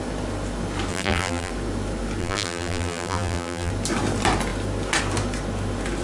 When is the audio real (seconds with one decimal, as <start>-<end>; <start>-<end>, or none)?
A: 0.0-0.9; 1.5-2.2; 3.7-6.0